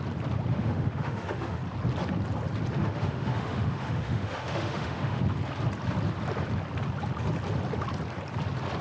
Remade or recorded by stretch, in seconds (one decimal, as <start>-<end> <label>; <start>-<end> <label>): 0.0-0.5 recorded; 0.5-1.6 remade; 1.6-2.8 recorded; 2.8-5.2 remade; 5.2-8.8 recorded

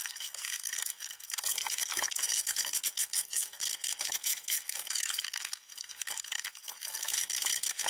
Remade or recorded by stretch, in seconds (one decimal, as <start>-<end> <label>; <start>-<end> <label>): 0.0-7.9 remade

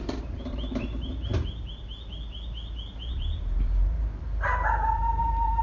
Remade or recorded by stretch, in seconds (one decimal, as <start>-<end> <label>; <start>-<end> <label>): 0.0-1.3 remade; 1.3-3.1 recorded; 3.1-5.6 remade

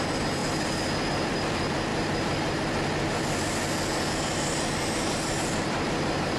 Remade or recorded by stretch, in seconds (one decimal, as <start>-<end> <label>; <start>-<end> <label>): 0.0-0.4 remade; 0.4-1.3 recorded; 1.3-1.9 remade; 1.9-5.4 recorded; 5.4-6.4 remade

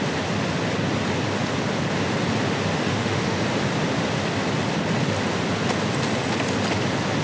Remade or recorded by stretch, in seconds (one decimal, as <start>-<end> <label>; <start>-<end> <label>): 0.0-2.7 recorded; 2.7-3.4 remade; 3.4-7.2 recorded

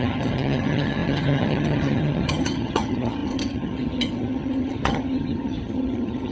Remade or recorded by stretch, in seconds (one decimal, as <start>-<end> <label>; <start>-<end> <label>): 0.0-6.3 remade

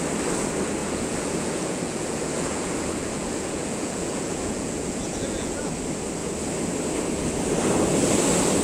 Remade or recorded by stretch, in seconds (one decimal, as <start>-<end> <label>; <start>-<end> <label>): 0.0-0.8 recorded; 0.8-5.7 remade; 5.7-8.6 recorded